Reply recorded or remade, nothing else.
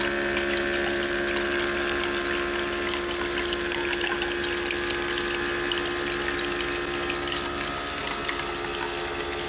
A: recorded